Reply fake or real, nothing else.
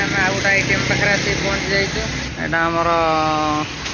real